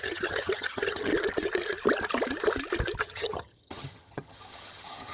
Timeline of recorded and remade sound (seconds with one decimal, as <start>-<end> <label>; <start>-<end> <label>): 0.0-1.1 remade; 1.1-3.0 recorded; 3.0-5.1 remade